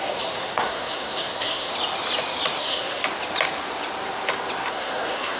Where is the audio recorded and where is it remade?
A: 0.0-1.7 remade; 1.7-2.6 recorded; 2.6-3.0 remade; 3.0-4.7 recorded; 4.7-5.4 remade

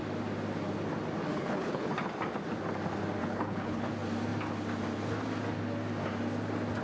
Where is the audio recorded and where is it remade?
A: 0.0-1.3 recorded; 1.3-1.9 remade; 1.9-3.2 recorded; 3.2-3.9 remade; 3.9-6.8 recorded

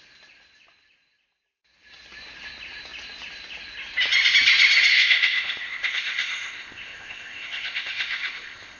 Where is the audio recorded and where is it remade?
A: 0.0-4.9 recorded; 4.9-8.8 remade

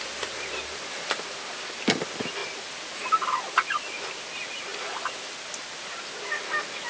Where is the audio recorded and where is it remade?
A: 0.0-6.9 recorded

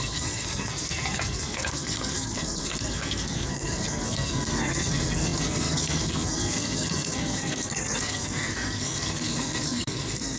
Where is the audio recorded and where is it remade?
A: 0.0-10.4 remade

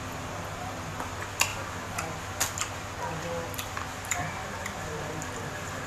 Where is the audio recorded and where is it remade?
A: 0.0-5.9 recorded

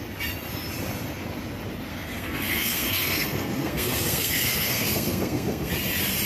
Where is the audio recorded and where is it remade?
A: 0.0-1.9 recorded; 1.9-5.7 remade; 5.7-6.3 recorded

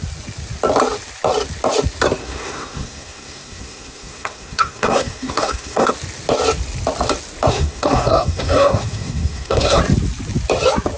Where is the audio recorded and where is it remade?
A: 0.0-2.2 recorded; 2.2-5.9 remade; 5.9-7.5 recorded; 7.5-9.8 remade; 9.8-11.0 recorded